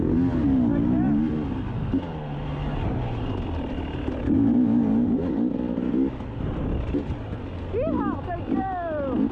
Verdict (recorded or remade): recorded